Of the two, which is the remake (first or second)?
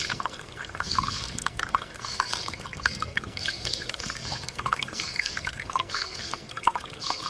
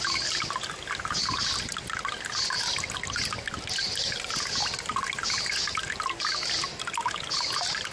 first